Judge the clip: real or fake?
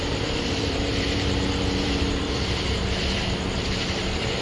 fake